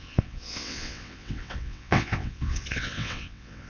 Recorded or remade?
remade